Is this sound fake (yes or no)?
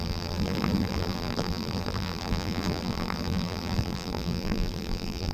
yes